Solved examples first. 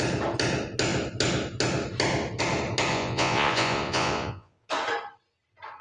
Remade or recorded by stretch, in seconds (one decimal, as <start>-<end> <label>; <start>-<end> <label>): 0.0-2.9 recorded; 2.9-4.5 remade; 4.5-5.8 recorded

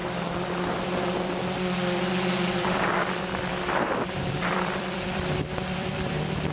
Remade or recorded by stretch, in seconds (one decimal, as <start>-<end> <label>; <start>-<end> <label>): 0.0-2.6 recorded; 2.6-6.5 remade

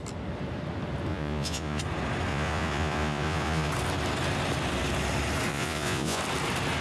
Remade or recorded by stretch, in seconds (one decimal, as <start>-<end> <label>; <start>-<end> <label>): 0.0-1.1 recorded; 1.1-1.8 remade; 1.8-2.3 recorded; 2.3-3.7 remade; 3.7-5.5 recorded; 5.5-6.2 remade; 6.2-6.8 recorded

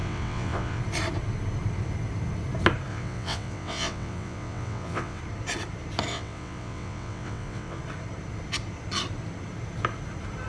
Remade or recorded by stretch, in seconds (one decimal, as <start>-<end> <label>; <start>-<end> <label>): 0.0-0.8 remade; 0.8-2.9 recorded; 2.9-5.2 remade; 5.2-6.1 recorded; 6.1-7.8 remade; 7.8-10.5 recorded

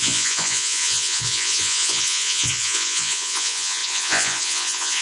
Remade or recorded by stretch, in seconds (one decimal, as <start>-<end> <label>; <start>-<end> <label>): 0.0-5.0 remade

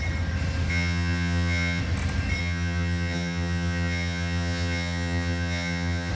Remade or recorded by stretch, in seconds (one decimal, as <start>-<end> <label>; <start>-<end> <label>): 0.0-0.7 recorded; 0.7-1.8 remade; 1.8-2.4 recorded; 2.4-6.1 remade

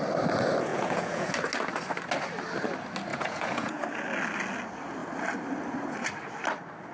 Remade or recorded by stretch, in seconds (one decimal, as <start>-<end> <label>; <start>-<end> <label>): 0.0-0.7 recorded; 0.7-1.3 remade; 1.3-3.1 recorded; 3.1-3.8 remade; 3.8-6.9 recorded